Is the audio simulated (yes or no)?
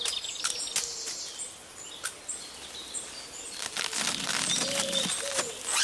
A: no